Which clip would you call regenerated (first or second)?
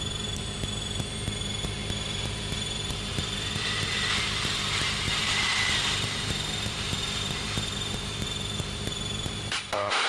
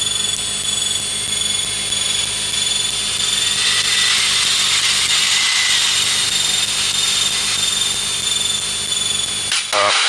first